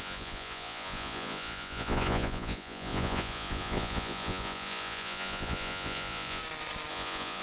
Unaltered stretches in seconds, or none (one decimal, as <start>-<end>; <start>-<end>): 6.4-6.9